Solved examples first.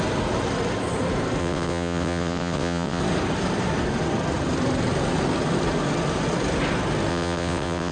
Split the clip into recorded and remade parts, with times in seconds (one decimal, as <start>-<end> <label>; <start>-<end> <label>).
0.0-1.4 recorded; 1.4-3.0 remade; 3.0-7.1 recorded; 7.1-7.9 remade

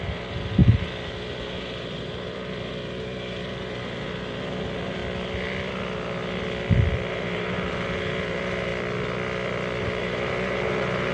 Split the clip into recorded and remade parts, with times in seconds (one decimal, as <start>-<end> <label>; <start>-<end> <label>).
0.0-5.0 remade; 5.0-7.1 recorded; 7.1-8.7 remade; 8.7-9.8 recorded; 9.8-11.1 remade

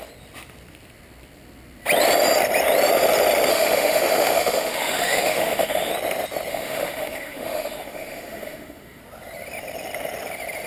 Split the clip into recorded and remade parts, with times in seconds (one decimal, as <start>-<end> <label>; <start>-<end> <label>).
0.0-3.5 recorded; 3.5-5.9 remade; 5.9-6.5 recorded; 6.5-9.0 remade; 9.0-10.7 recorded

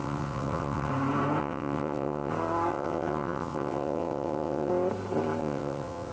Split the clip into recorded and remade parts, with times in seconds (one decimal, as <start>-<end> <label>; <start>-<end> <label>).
0.0-0.9 remade; 0.9-1.4 recorded; 1.4-2.3 remade; 2.3-2.7 recorded; 2.7-4.7 remade; 4.7-5.4 recorded; 5.4-6.1 remade